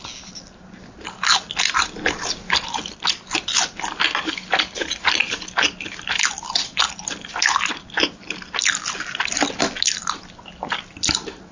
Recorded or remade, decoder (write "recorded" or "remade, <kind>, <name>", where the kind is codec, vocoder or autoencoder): recorded